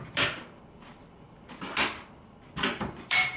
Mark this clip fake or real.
fake